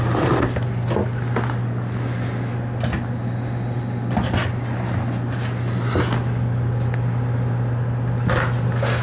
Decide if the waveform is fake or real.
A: real